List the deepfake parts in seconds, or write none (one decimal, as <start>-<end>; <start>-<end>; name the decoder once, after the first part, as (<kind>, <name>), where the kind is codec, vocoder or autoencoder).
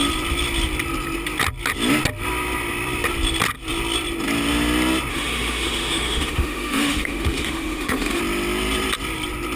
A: 5.1-8.2 (autoencoder, DAC-VAE)